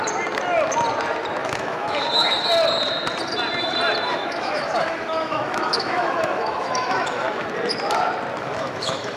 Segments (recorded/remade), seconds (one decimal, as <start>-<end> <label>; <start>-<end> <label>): 0.0-1.4 recorded; 1.4-2.3 remade; 2.3-4.1 recorded; 4.1-7.5 remade; 7.5-8.4 recorded; 8.4-9.2 remade